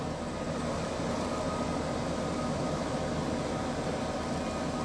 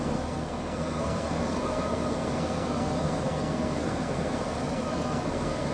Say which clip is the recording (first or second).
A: first